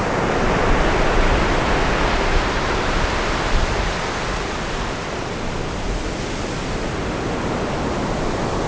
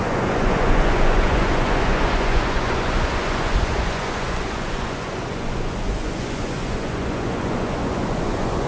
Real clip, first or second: first